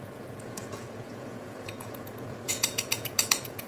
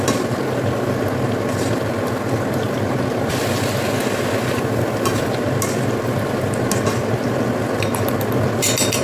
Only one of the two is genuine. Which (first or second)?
second